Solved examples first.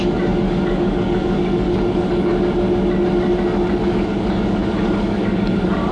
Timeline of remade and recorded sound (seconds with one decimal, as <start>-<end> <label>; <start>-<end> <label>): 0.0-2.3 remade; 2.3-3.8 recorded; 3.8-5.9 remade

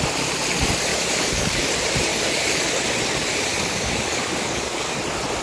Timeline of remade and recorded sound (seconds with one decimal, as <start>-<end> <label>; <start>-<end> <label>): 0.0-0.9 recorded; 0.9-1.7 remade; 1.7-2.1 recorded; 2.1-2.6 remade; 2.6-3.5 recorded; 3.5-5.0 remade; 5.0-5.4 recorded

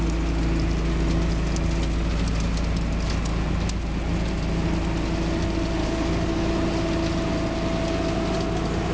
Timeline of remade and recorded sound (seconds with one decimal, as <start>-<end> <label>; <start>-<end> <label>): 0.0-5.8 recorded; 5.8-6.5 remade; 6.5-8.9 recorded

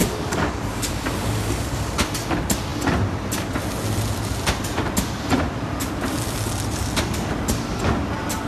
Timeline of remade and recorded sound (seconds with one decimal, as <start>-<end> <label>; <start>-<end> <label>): 0.0-1.9 remade; 1.9-8.5 recorded